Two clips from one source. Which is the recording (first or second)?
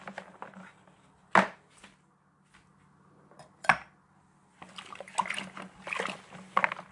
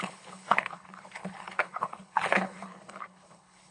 first